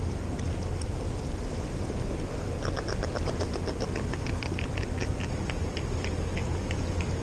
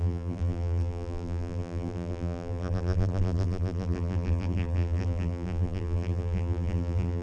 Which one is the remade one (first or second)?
second